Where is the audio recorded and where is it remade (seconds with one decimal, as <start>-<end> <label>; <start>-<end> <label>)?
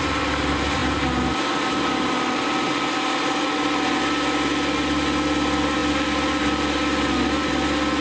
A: 0.0-8.0 recorded